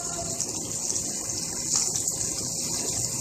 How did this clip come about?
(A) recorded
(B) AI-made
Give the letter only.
A